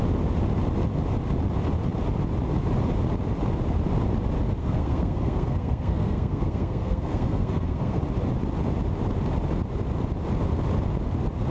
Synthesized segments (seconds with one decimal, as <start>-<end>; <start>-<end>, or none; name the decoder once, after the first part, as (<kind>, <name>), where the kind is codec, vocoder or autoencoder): 4.6-8.0 (codec, SNAC)